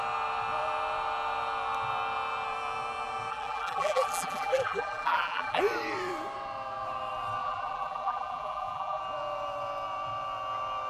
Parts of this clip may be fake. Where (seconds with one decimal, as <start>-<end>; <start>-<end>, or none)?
3.3-5.6; 7.4-9.0